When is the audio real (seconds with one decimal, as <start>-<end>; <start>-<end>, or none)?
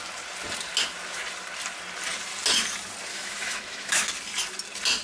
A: 0.0-3.1; 4.1-5.0